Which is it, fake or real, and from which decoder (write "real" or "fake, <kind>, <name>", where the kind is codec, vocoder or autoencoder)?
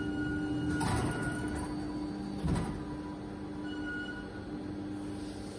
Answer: real